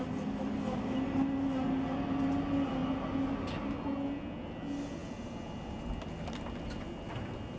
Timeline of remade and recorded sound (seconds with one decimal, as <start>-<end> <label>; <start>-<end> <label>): 0.0-7.6 recorded